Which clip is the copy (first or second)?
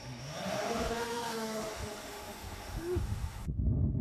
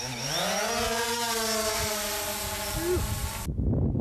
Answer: first